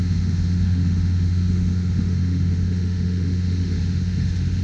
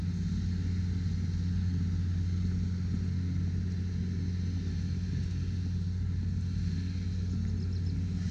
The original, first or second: second